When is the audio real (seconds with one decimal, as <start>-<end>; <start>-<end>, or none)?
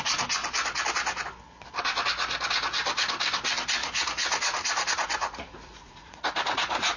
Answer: 0.0-3.8